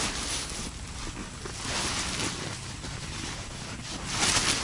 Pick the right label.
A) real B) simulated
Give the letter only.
A